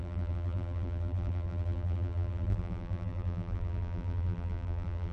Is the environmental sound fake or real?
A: fake